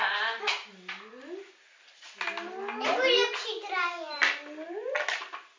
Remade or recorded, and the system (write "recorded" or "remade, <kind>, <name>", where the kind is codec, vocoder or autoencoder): recorded